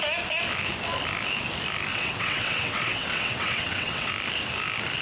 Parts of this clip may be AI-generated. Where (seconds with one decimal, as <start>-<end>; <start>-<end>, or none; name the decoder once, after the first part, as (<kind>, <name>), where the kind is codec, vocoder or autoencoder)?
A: 1.9-4.1 (vocoder, WaveNeXt)